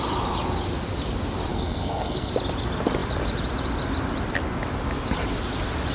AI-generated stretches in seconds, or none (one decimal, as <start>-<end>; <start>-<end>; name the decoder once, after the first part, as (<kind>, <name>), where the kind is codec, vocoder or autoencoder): 1.5-2.3 (codec, SNAC)